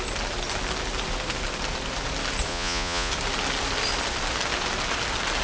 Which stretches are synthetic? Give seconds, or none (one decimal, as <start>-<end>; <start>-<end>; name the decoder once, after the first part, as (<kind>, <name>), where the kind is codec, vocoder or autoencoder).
2.5-3.1 (vocoder, Vocos)